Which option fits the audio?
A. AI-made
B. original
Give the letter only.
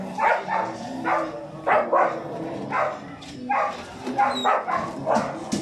B